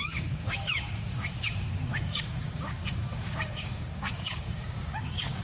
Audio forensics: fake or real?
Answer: fake